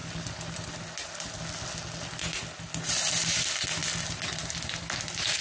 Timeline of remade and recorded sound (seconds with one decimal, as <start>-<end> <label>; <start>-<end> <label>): 0.0-5.4 recorded